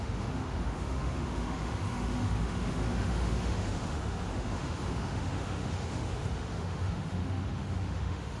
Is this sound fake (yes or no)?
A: yes